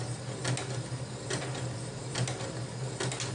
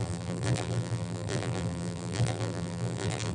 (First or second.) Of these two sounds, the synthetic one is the second